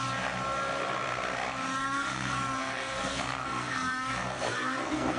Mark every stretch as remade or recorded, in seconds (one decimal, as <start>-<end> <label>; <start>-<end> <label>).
0.0-1.8 recorded; 1.8-5.2 remade